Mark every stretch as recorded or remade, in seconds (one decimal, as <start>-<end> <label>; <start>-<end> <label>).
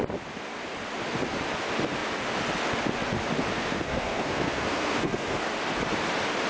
0.0-3.5 recorded; 3.5-5.4 remade; 5.4-6.5 recorded